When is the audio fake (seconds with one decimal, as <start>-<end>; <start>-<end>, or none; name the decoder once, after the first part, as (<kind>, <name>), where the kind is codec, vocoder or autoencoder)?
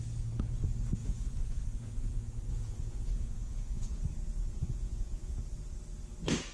1.0-4.0 (vocoder, Vocos); 4.5-5.3